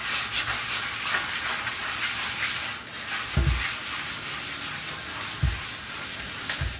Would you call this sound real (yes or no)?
yes